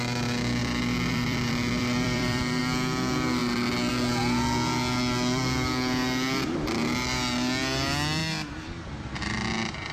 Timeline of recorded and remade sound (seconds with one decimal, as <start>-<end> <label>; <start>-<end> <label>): 0.0-0.6 recorded; 0.6-2.6 remade; 2.6-9.9 recorded